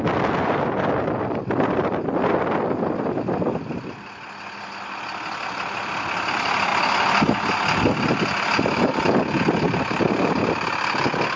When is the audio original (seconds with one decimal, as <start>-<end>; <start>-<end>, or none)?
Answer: 0.0-11.4